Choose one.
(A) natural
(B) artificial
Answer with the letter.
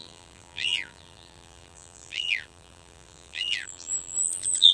B